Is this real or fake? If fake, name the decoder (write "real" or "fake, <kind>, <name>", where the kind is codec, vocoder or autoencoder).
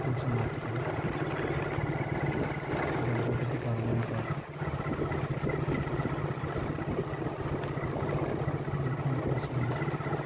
real